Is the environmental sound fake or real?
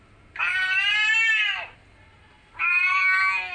real